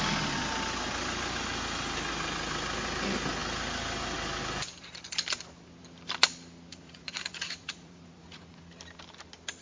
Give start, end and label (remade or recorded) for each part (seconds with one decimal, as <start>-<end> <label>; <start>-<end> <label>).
0.0-6.7 recorded; 6.7-8.6 remade; 8.6-9.6 recorded